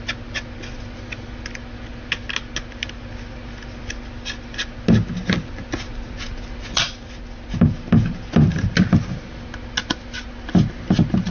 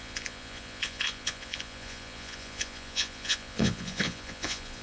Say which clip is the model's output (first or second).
second